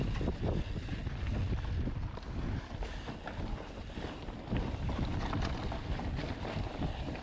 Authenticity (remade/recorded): recorded